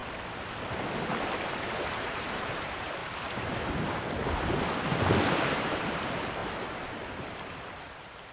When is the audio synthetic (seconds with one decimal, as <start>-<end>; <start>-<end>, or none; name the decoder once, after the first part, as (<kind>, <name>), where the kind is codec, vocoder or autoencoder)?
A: 1.0-3.0 (vocoder, BigVGAN v2); 6.0-8.3